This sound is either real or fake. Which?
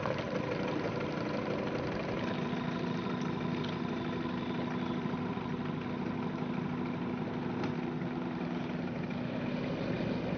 real